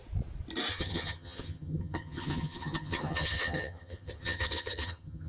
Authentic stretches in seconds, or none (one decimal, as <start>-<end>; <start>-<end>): 0.0-0.7